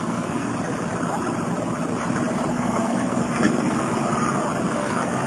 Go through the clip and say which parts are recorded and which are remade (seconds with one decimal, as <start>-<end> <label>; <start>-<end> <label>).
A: 0.0-0.5 remade; 0.5-2.5 recorded; 2.5-3.9 remade; 3.9-4.7 recorded; 4.7-5.3 remade